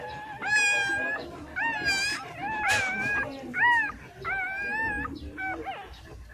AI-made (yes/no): no